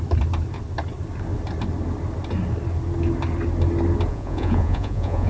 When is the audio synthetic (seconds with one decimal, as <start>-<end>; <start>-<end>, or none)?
4.1-5.3